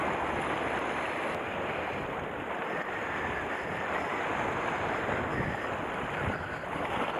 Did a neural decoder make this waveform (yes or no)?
no